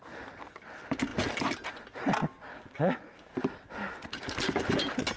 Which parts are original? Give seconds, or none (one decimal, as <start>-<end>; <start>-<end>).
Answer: 0.0-5.2